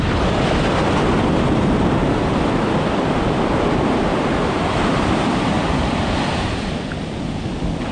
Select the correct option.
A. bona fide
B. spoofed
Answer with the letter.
A